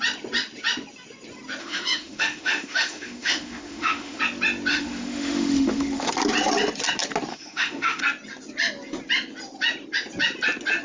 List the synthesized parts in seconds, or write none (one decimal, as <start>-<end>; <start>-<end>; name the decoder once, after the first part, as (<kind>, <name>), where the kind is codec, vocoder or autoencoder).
1.6-4.2 (autoencoder, DAC-VAE); 4.7-6.1; 7.3-8.0